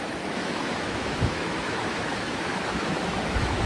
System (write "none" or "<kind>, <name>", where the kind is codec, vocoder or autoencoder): autoencoder, DAC-VAE